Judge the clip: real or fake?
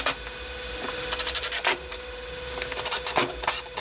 real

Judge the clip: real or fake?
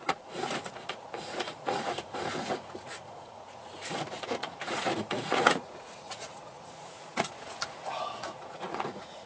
fake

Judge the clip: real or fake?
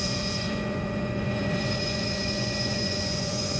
fake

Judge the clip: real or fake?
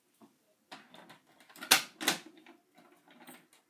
real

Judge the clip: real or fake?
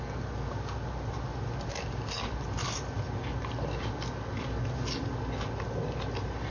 real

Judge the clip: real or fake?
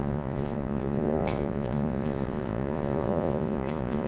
fake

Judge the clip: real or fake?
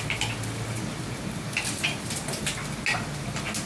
real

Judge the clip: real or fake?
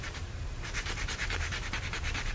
fake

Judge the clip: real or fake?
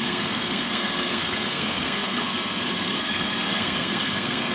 fake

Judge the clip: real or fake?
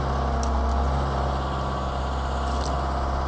real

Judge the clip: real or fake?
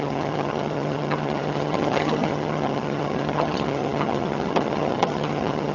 fake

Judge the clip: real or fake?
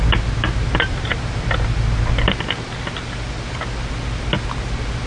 real